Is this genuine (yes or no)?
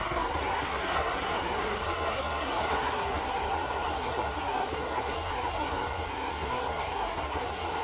no